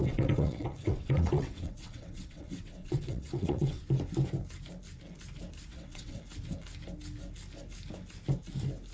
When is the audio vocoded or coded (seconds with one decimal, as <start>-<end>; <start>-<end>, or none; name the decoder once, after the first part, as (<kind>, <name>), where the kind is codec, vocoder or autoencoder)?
0.0-3.8 (vocoder, WaveNeXt); 5.7-6.2